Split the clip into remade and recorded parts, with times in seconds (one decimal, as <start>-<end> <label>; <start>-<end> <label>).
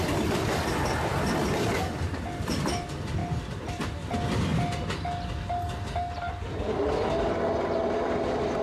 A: 0.0-3.2 recorded; 3.2-3.8 remade; 3.8-8.6 recorded